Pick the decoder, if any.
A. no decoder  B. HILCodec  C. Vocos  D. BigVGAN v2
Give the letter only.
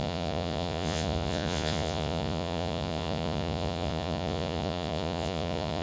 C